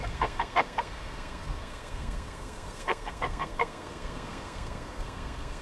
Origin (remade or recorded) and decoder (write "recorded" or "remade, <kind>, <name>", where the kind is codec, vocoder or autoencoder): remade, codec, SNAC